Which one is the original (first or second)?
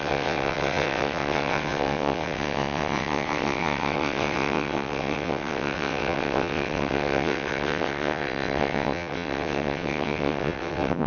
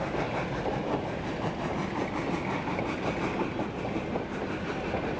second